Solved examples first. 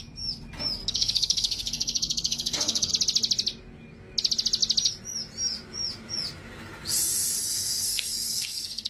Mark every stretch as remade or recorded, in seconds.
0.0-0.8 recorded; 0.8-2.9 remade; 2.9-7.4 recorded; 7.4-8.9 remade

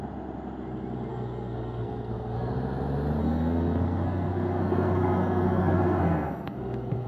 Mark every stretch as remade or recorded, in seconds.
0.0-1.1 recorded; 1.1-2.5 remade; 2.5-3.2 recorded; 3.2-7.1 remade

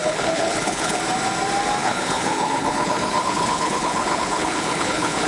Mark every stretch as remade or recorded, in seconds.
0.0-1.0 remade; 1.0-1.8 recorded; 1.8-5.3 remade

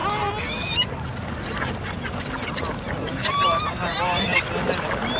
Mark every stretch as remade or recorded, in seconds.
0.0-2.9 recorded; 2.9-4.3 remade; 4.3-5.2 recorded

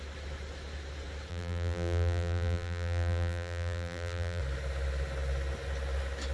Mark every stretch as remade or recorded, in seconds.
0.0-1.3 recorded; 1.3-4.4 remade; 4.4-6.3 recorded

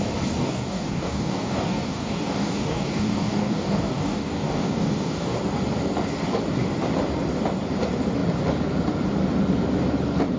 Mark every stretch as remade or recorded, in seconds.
0.0-0.4 recorded; 0.4-5.4 remade; 5.4-10.4 recorded